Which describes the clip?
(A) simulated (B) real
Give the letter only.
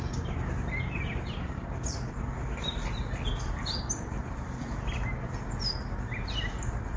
B